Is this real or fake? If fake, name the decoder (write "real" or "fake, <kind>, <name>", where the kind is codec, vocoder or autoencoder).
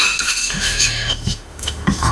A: fake, autoencoder, DAC-VAE